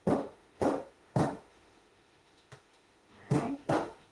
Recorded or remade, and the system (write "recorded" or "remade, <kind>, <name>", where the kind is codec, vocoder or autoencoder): remade, autoencoder, DAC-VAE